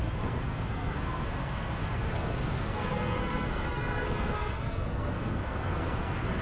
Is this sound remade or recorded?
remade